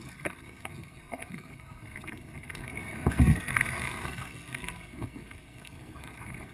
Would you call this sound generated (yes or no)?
yes